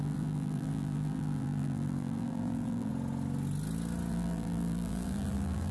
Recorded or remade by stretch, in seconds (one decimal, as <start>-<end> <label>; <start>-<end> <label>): 0.0-2.9 remade; 2.9-4.1 recorded; 4.1-5.7 remade